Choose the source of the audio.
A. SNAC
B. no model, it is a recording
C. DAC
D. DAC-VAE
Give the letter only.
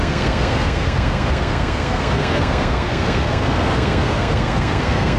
A